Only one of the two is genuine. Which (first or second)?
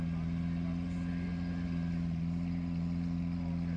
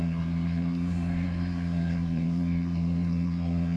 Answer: first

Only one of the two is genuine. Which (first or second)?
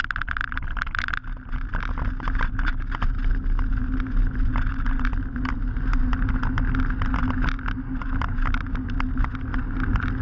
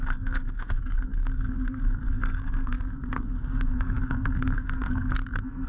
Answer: first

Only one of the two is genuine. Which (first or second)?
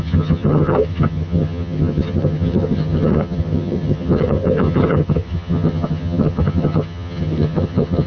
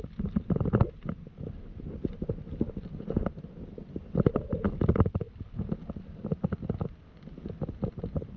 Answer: second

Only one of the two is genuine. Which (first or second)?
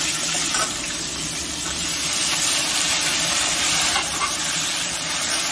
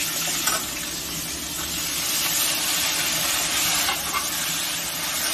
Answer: second